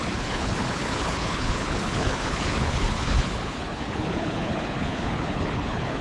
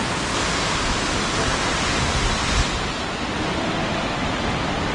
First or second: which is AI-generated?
first